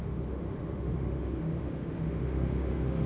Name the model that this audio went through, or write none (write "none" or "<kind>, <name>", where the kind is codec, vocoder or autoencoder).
autoencoder, DAC-VAE